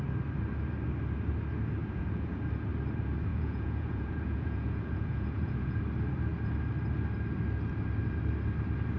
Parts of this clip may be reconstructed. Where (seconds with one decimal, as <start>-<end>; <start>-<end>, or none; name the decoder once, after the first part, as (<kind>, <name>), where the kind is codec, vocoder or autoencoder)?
1.8-2.4 (vocoder, Vocos); 3.3-5.8